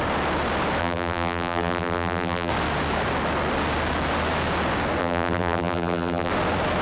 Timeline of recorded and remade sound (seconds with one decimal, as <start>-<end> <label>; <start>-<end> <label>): 0.0-0.8 recorded; 0.8-2.5 remade; 2.5-5.0 recorded; 5.0-6.3 remade; 6.3-6.8 recorded